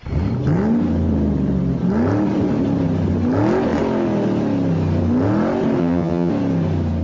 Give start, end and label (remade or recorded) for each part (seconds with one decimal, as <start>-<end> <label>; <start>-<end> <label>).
0.0-5.8 recorded; 5.8-6.3 remade; 6.3-7.0 recorded